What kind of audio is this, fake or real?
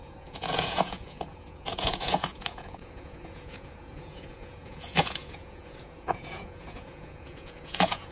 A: fake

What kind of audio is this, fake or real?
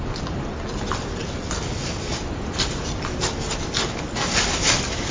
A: real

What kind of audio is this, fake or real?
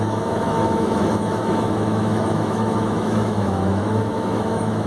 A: fake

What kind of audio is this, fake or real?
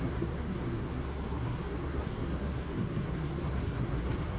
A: fake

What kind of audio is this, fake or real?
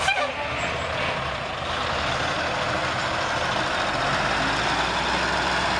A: real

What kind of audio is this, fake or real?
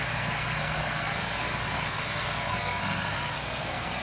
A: fake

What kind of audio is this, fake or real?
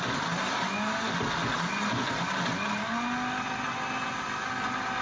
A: real